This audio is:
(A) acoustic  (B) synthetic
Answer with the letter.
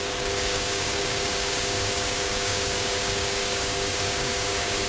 B